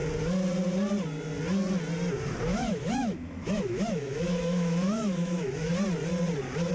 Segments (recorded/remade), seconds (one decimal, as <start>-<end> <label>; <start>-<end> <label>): 0.0-2.5 recorded; 2.5-5.7 remade; 5.7-6.7 recorded